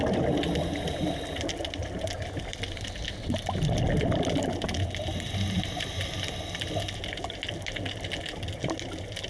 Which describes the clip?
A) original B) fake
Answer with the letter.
A